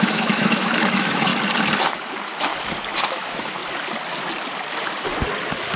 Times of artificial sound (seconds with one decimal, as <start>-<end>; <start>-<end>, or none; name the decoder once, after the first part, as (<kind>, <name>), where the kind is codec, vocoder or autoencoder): 0.0-1.3 (autoencoder, DAC-VAE); 1.9-2.5; 3.1-3.6